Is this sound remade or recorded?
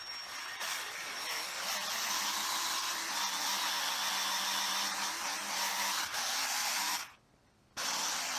recorded